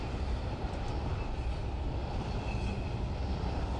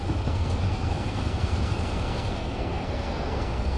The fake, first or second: second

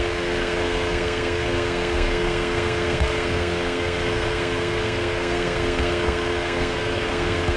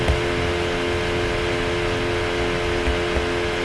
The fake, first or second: first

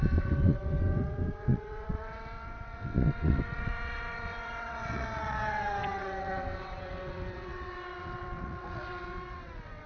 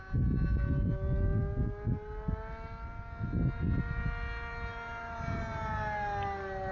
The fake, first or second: first